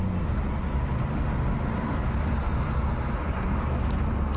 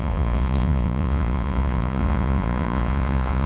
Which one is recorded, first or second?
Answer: first